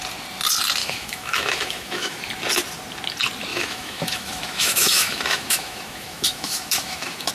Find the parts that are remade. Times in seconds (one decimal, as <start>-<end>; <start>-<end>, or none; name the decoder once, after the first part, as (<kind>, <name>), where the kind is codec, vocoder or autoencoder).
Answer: 0.8-2.2 (autoencoder, DAC-VAE); 3.5-7.3